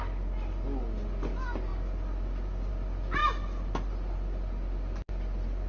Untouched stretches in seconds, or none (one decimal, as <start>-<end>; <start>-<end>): 0.0-5.7